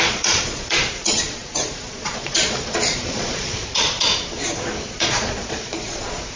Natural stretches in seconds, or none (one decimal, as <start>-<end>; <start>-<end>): 4.1-4.8